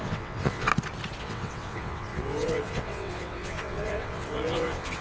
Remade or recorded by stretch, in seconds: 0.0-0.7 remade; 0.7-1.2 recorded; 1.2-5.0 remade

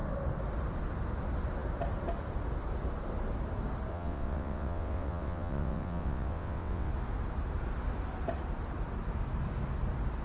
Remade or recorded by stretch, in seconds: 0.0-3.9 recorded; 3.9-6.9 remade; 6.9-10.2 recorded

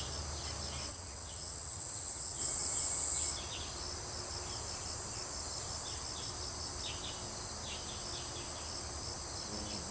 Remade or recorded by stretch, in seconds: 0.0-0.9 recorded; 0.9-2.4 remade; 2.4-9.9 recorded

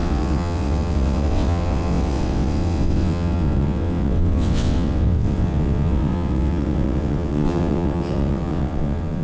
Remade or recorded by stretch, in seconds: 0.0-9.2 remade

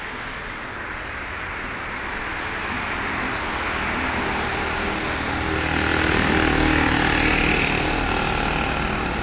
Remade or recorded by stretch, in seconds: 0.0-9.2 recorded

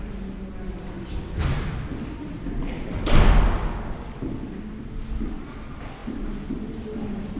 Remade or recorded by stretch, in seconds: 0.0-7.4 recorded

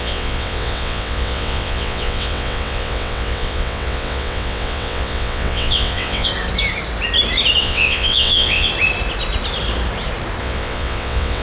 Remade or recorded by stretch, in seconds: 0.0-6.3 remade; 6.3-7.6 recorded; 7.6-8.7 remade; 8.7-10.4 recorded; 10.4-11.4 remade

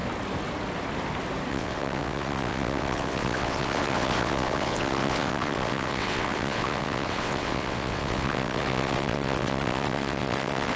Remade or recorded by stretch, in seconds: 0.0-1.5 recorded; 1.5-10.8 remade